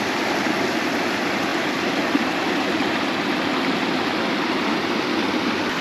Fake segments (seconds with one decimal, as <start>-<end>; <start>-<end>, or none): none